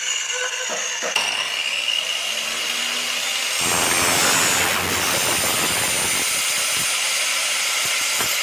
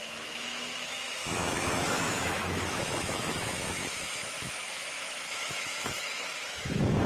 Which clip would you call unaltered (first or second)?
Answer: first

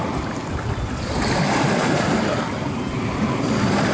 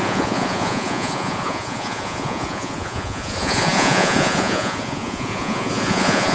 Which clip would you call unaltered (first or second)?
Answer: first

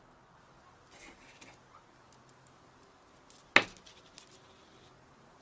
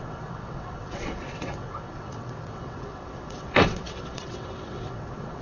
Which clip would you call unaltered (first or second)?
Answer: first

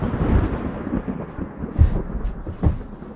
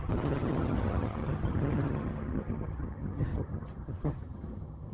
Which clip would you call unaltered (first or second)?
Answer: first